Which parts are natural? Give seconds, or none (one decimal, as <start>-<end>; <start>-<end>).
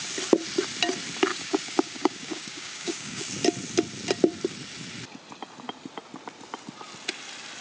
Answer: 0.0-1.3; 3.3-7.6